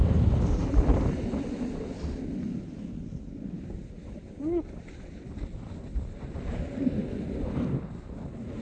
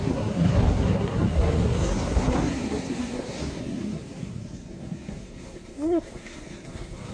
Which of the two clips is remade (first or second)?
second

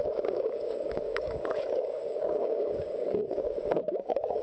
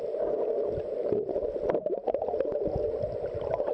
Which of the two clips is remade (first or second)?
first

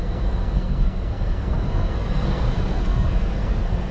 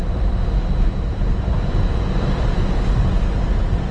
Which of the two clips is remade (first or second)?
first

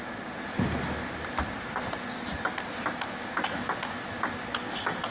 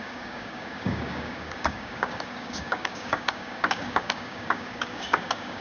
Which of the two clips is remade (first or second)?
second